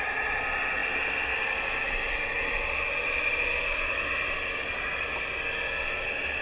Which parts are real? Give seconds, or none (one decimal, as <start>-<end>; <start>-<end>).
0.0-6.4